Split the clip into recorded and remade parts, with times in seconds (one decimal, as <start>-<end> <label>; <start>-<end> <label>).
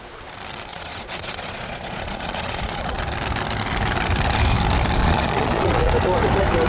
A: 0.0-0.7 recorded; 0.7-3.0 remade; 3.0-5.0 recorded; 5.0-5.9 remade; 5.9-6.7 recorded